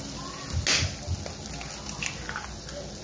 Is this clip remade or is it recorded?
recorded